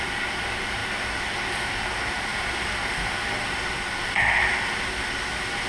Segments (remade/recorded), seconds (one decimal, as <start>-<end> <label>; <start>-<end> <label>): 0.0-5.7 recorded